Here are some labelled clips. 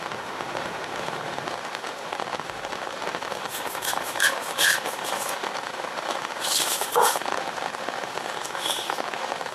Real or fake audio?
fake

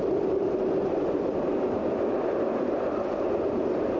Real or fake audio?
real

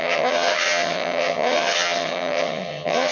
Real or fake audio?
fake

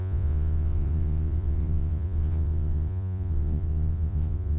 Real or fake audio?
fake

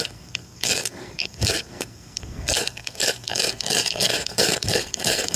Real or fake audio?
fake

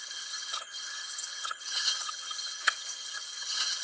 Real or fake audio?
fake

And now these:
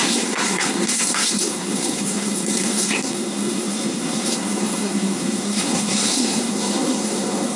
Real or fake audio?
fake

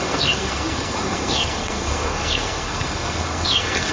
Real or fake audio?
fake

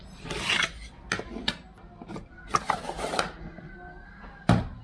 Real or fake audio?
real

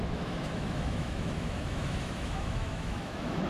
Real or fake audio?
fake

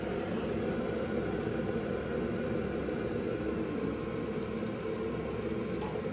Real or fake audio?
real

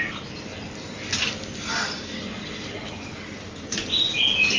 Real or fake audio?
real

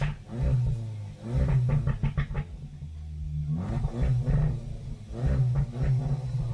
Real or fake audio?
real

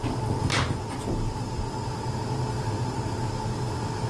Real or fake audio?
real